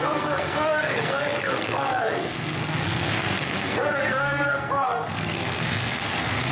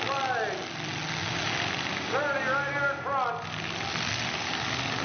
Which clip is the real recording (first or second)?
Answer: second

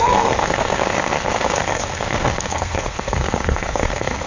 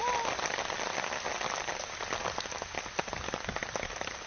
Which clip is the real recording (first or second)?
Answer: second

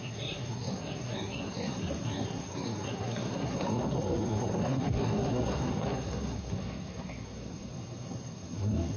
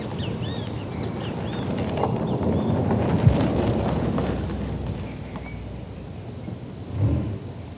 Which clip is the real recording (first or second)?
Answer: second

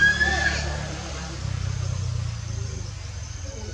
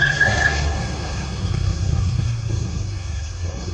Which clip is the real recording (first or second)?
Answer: first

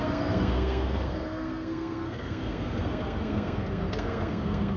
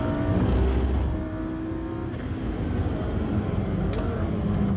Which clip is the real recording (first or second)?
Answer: second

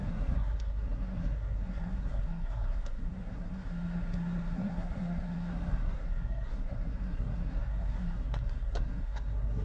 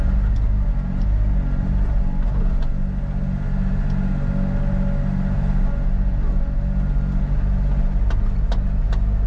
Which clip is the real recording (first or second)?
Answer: second